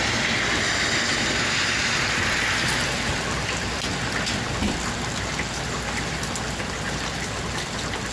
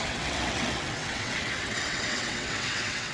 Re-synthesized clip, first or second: second